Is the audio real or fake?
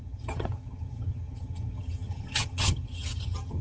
fake